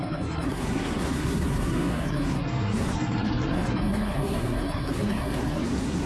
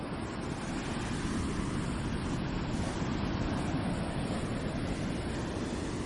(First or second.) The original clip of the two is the second